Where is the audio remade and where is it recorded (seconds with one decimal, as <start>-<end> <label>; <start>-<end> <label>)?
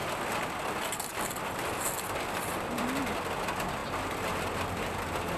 0.0-0.6 remade; 0.6-1.1 recorded; 1.1-3.0 remade; 3.0-5.4 recorded